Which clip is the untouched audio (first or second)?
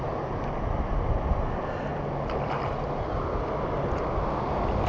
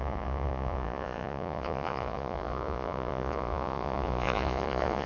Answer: first